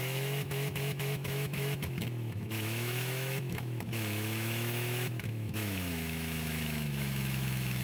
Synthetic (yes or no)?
yes